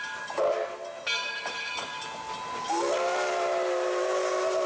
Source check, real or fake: real